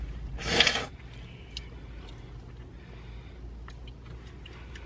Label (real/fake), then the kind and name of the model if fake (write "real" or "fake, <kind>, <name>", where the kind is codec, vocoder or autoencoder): real